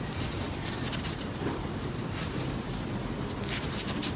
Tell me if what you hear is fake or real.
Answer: real